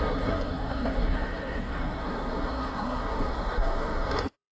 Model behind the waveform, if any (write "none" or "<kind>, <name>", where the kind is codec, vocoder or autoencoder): codec, SNAC